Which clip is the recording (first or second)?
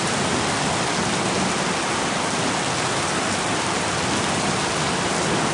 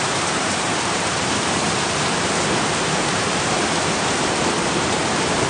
first